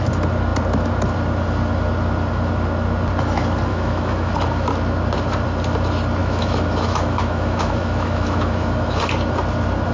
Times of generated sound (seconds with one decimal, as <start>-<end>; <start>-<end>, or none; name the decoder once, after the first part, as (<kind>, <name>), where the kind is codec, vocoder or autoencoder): 3.7-4.3 (autoencoder, DAC-VAE); 6.2-9.0